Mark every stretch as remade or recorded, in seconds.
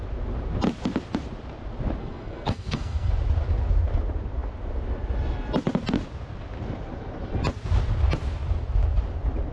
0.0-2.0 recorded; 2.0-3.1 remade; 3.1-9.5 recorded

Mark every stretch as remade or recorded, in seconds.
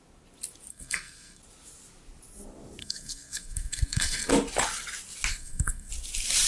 0.0-0.7 recorded; 0.7-1.4 remade; 1.4-2.8 recorded; 2.8-4.3 remade; 4.3-5.3 recorded; 5.3-5.9 remade; 5.9-6.5 recorded